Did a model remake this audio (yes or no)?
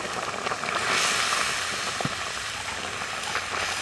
no